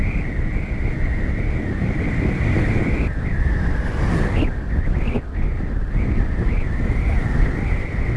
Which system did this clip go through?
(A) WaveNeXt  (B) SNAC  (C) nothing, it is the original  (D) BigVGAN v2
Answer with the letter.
C